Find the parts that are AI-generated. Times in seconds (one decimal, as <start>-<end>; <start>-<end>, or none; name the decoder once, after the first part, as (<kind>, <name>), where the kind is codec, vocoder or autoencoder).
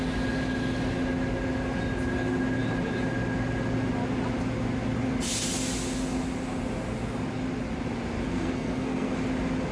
8.3-9.1 (codec, SNAC)